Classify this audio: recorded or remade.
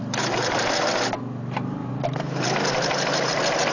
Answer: remade